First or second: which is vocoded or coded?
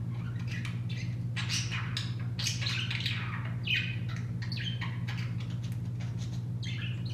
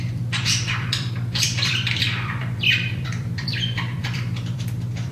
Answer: second